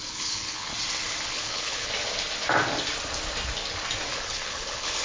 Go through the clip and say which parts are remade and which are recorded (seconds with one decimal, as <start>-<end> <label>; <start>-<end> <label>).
0.0-0.7 remade; 0.7-1.3 recorded; 1.3-1.9 remade; 1.9-4.1 recorded; 4.1-5.0 remade